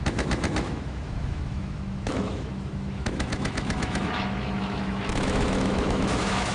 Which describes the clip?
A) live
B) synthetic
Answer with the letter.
B